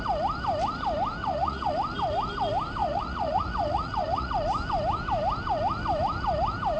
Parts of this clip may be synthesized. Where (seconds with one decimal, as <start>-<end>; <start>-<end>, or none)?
1.2-1.7; 2.8-4.3

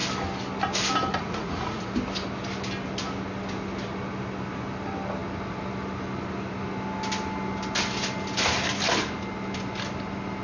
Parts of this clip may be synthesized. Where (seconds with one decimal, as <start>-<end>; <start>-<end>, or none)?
1.1-1.8

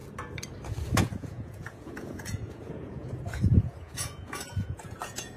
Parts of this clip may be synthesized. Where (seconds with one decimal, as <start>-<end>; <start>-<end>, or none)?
1.0-5.4

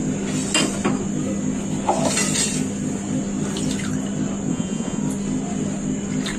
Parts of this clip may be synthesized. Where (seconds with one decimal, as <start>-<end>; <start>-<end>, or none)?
4.5-5.0

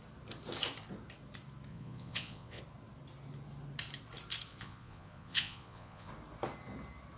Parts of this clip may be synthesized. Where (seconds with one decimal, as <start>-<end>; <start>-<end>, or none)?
1.7-2.6; 4.5-6.1

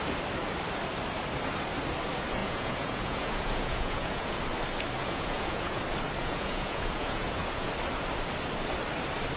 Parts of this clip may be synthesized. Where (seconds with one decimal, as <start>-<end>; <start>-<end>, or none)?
2.4-4.4; 5.0-5.8; 6.2-7.7